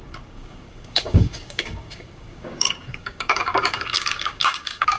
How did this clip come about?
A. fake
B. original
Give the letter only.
A